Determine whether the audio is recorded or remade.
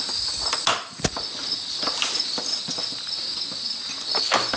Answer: recorded